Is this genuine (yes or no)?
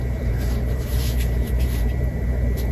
no